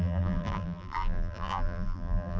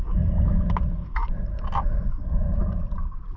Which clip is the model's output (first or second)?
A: first